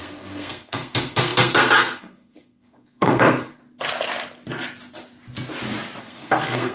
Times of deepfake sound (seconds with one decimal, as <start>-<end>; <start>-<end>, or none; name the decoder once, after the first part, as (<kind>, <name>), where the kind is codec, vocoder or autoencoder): 0.0-3.6 (codec, SNAC); 6.0-6.7